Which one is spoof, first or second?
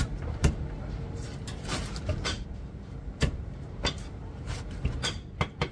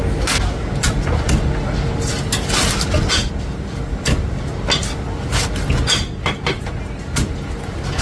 first